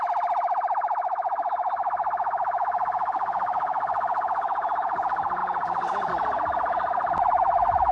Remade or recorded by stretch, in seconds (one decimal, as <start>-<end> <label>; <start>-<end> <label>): 0.0-7.9 recorded